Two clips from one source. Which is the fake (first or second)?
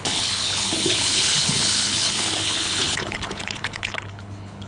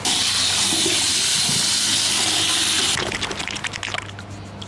first